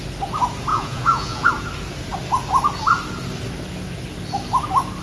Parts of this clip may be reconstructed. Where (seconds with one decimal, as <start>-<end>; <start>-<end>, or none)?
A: 0.7-1.5